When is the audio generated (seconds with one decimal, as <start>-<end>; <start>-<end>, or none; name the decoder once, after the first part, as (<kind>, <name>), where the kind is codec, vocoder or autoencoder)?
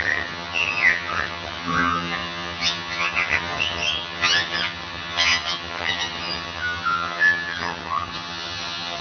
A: 0.0-9.0 (vocoder, HiFi-GAN)